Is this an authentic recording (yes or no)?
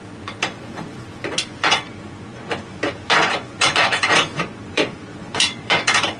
no